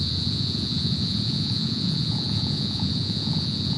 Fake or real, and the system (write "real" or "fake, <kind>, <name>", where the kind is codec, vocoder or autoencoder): fake, vocoder, Vocos